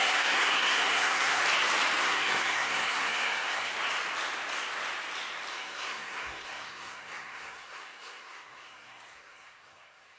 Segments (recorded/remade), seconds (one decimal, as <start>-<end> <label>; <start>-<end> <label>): 0.0-1.4 remade; 1.4-2.0 recorded; 2.0-3.7 remade; 3.7-5.5 recorded; 5.5-10.2 remade